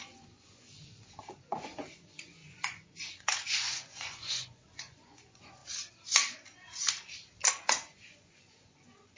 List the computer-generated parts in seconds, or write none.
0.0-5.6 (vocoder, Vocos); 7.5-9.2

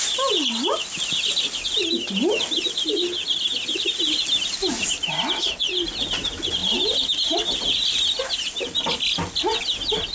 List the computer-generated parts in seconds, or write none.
none

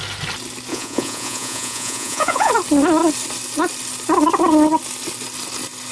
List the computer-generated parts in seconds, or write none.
0.7-2.5 (vocoder, Vocos)

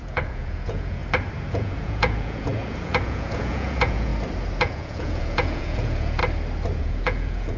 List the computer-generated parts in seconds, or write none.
0.0-1.0 (vocoder, Vocos); 1.5-4.1; 4.6-6.2; 6.8-7.6

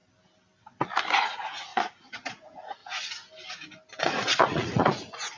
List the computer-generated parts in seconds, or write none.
1.2-2.8 (vocoder, Vocos); 4.0-5.4

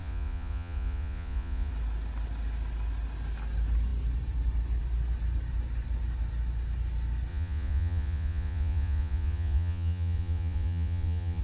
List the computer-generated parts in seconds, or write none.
0.0-1.7 (vocoder, Vocos); 7.3-11.4